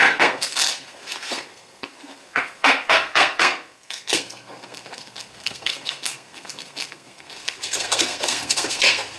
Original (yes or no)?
no